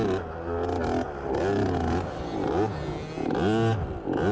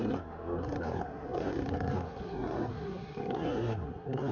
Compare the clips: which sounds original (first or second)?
first